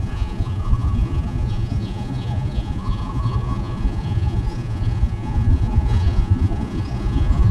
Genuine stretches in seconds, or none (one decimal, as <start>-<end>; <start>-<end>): none